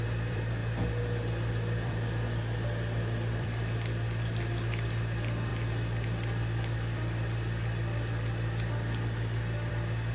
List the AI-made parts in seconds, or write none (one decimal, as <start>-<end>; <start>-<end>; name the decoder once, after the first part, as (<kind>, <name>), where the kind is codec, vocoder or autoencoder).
0.0-0.6 (vocoder, BigVGAN v2); 1.5-5.5; 9.7-10.1